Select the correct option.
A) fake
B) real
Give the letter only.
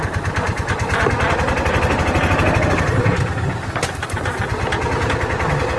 B